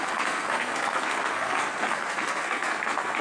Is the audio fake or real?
fake